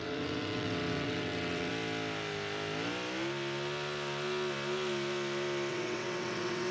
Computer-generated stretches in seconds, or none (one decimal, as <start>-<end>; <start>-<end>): 0.0-1.7; 5.7-6.7